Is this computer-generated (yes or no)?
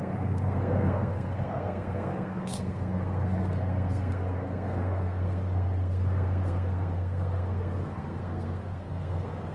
yes